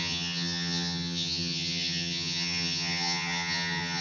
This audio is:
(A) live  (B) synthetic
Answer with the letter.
B